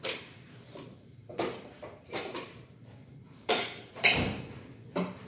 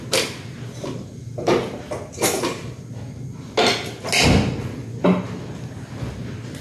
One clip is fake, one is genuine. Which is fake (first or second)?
first